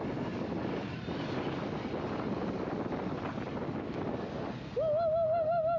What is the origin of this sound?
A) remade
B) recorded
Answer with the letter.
B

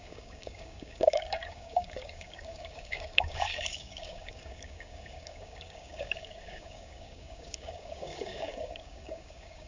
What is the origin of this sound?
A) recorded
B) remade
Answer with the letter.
B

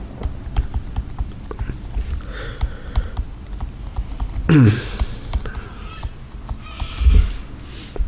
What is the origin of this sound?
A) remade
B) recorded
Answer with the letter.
B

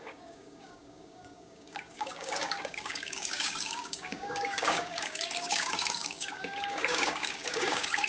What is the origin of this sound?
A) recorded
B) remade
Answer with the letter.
B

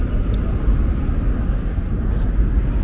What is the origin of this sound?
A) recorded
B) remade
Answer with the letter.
A